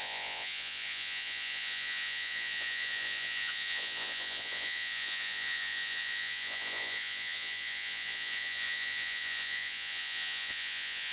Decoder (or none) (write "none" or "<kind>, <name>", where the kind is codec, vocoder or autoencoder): vocoder, Vocos